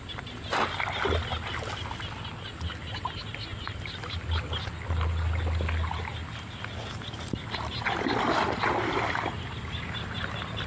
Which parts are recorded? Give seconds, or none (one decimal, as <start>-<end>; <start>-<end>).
0.0-10.7